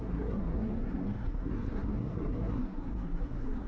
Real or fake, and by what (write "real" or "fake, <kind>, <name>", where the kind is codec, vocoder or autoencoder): fake, codec, SNAC